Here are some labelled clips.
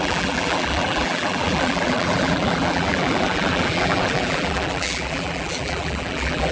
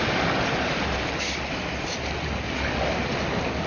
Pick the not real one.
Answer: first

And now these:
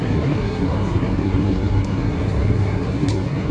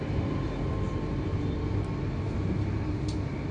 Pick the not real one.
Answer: first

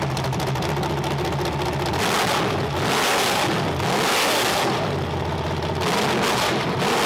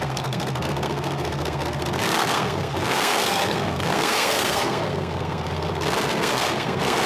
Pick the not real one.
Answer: second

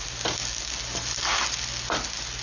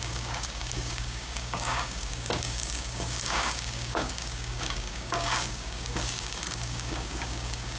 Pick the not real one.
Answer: second